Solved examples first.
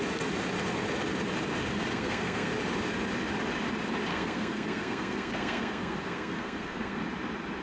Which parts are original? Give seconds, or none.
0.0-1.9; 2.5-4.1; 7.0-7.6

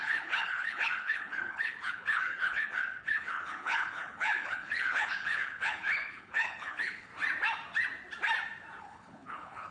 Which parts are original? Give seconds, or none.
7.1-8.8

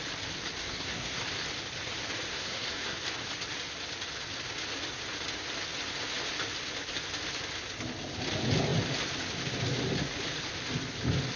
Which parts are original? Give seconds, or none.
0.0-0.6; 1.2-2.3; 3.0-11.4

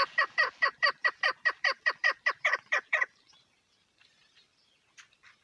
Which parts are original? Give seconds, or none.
none

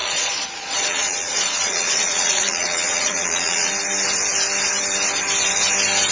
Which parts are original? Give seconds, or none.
3.7-6.1

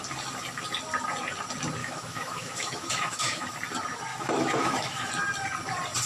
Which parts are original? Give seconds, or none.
0.0-1.8; 3.6-4.1; 5.1-6.1

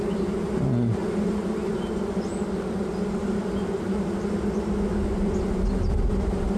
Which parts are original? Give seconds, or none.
0.0-6.6

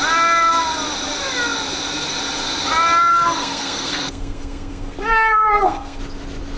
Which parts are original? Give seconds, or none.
0.0-3.1; 6.0-6.6